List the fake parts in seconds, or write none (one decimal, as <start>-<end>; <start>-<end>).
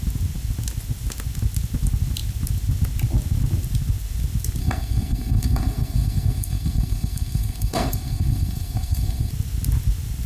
4.6-9.3